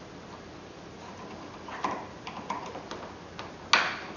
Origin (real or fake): real